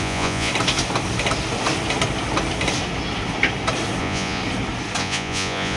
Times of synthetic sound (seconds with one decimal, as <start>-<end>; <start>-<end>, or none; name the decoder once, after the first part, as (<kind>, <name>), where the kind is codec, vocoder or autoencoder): 0.0-0.5 (vocoder, Vocos); 4.0-4.4; 5.0-5.8